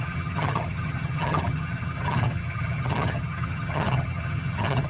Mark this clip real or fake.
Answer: fake